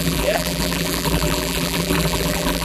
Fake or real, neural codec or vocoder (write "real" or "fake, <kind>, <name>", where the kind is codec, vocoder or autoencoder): fake, vocoder, BigVGAN v2